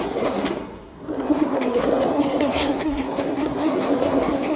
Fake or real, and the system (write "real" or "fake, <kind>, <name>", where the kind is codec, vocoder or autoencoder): fake, codec, SNAC